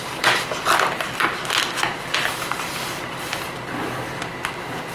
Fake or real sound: fake